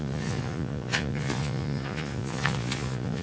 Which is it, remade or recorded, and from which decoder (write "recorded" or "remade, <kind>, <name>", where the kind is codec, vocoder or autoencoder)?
remade, vocoder, Vocos